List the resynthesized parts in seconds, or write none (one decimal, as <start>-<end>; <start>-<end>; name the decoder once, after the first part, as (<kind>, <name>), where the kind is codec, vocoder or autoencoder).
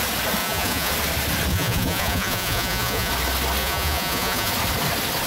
0.4-0.9 (vocoder, Vocos); 1.5-3.1; 3.6-4.5